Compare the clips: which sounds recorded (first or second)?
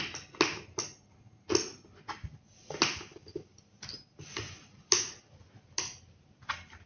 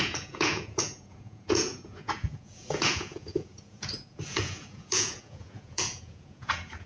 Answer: first